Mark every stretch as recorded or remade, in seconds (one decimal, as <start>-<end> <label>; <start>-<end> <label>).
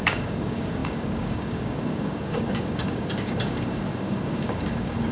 0.0-5.1 remade